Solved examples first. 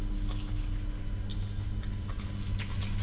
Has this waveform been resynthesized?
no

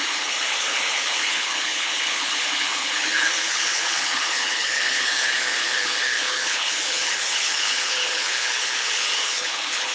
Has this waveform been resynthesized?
yes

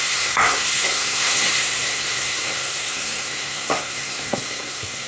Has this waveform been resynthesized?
yes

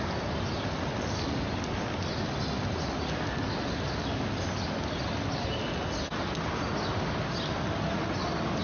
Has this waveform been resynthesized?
no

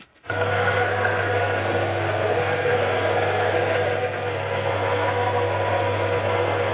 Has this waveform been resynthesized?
yes